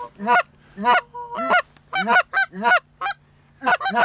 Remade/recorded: recorded